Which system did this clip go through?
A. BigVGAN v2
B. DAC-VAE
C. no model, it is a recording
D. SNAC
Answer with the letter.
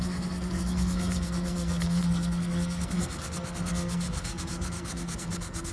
D